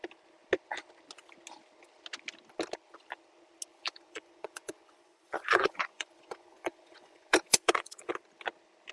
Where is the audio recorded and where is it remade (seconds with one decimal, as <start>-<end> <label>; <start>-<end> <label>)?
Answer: 0.0-3.7 recorded; 3.7-8.1 remade; 8.1-8.9 recorded